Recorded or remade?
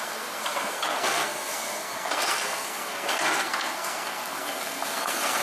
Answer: remade